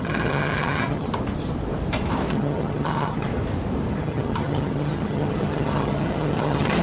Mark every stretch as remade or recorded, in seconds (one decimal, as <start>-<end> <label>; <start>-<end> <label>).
0.0-1.1 remade; 1.1-2.3 recorded; 2.3-3.3 remade; 3.3-3.9 recorded; 3.9-6.8 remade